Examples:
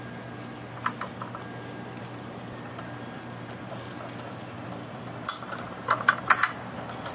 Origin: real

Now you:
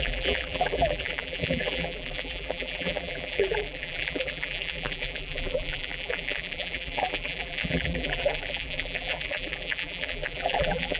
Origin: fake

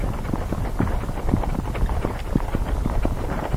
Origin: fake